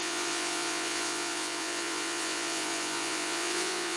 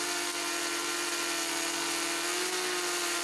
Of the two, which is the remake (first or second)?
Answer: first